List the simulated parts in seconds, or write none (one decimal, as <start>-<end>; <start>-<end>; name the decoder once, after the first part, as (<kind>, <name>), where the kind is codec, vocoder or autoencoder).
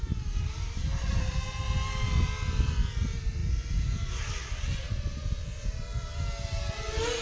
none